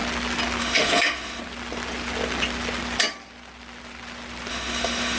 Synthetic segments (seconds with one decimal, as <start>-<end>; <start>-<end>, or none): 0.6-1.4; 4.5-5.2